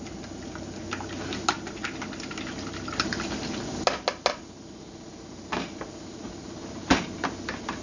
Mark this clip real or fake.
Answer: real